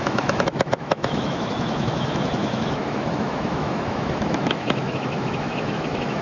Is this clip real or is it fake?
fake